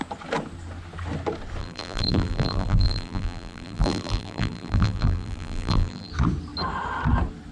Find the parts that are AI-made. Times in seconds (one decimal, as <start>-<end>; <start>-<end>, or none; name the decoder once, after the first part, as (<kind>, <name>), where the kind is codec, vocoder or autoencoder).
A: 1.6-6.1 (vocoder, BigVGAN v2)